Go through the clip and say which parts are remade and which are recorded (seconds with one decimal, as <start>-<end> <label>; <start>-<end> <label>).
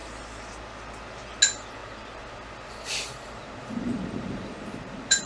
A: 0.0-1.8 recorded; 1.8-5.3 remade